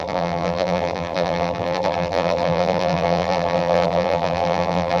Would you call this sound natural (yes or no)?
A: no